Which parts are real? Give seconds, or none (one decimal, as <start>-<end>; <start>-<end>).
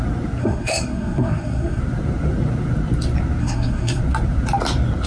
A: 0.0-0.4; 1.8-3.4; 4.0-5.1